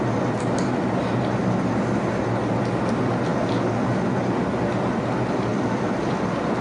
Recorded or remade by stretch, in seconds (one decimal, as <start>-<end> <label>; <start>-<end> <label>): 0.0-6.6 recorded